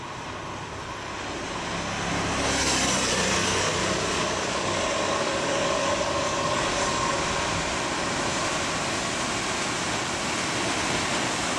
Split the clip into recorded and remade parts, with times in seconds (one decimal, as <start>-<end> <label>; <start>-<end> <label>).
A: 0.0-3.4 recorded; 3.4-7.1 remade; 7.1-11.6 recorded